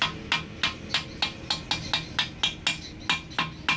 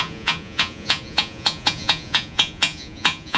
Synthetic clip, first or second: second